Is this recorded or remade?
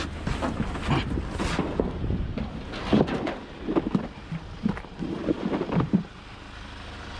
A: recorded